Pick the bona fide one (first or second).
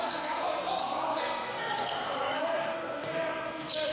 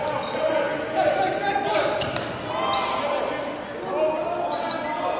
second